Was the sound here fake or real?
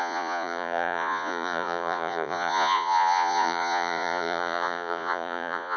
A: fake